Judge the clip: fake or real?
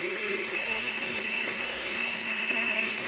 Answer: fake